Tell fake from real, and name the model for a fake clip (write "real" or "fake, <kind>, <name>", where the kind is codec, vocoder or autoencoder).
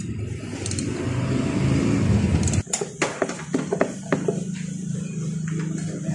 real